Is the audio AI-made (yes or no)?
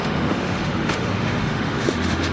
yes